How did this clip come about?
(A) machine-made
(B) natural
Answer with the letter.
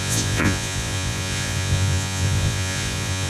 A